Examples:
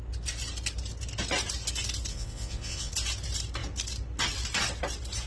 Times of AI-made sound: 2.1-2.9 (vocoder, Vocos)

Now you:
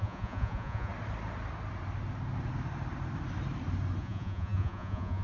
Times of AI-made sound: 0.0-0.9 (vocoder, Vocos); 4.0-5.2

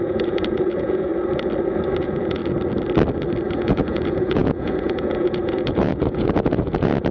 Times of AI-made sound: 0.0-1.1 (vocoder, Vocos); 2.0-2.4; 3.5-7.1

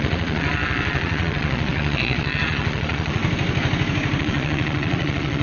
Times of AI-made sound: 0.0-3.2 (vocoder, Vocos); 4.2-5.4

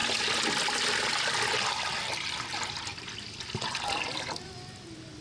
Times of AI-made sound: none

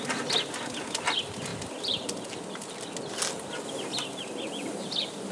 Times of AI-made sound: none

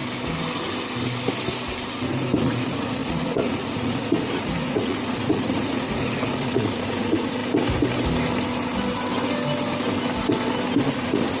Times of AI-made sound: 2.4-7.4 (vocoder, Vocos); 10.9-11.4

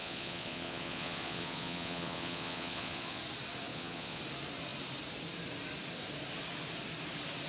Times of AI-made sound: 0.0-3.2 (vocoder, Vocos); 3.7-4.2